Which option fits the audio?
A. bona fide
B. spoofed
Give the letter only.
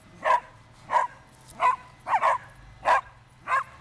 A